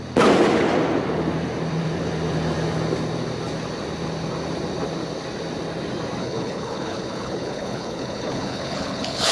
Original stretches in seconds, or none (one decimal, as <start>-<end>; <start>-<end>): 0.0-6.2